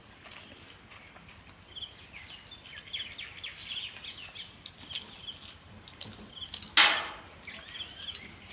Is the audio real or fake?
real